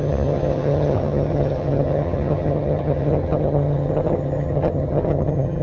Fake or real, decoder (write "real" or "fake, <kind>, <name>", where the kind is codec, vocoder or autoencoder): fake, vocoder, HiFi-GAN